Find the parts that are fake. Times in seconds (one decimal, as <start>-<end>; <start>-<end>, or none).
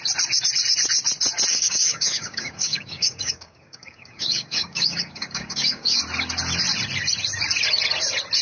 1.5-6.0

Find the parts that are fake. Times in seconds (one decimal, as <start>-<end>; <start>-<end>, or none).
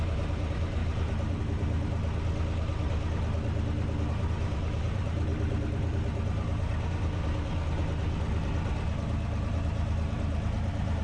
0.0-2.0; 4.1-11.0